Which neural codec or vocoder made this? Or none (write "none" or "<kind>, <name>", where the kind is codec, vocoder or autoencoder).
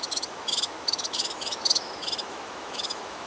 autoencoder, DAC-VAE